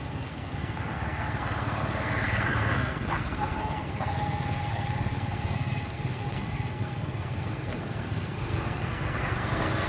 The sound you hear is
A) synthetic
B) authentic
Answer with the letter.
A